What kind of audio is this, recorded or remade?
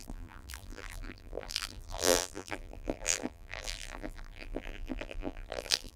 remade